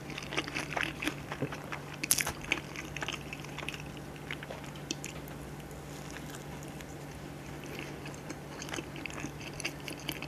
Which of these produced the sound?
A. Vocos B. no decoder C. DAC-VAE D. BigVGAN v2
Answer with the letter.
D